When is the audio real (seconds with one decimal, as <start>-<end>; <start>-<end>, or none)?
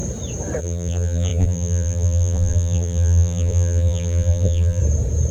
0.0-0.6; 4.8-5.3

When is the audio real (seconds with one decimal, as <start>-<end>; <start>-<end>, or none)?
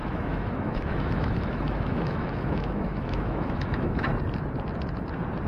4.1-5.5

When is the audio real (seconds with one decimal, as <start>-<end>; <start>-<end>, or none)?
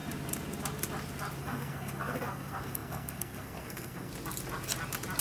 0.0-1.4; 4.1-5.2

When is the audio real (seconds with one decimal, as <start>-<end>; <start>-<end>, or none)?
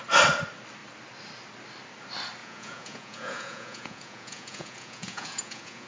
0.0-2.4